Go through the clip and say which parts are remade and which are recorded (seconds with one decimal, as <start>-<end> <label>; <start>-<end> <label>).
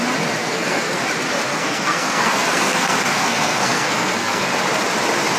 0.0-0.4 recorded; 0.4-1.0 remade; 1.0-1.5 recorded; 1.5-4.5 remade; 4.5-5.4 recorded